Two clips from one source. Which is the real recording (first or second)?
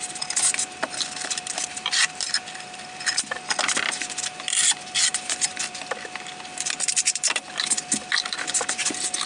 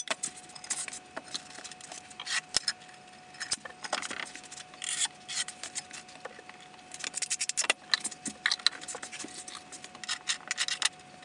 second